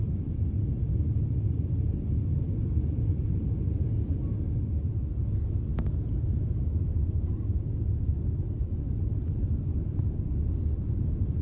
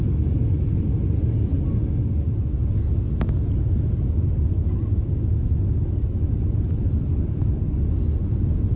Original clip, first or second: second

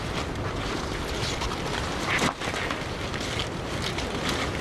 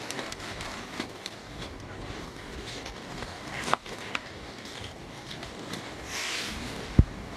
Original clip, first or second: first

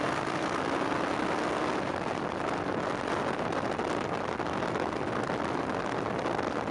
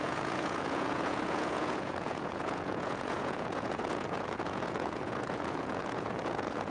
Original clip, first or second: first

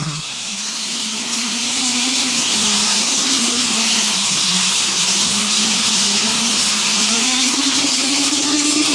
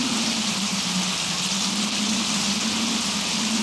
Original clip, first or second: second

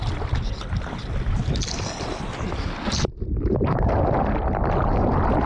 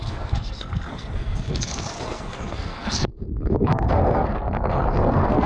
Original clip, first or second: first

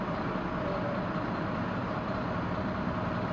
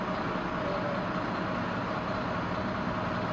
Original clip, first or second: second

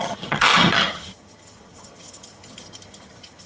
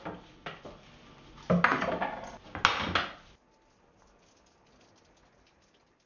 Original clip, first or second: second